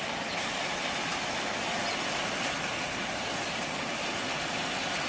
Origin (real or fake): real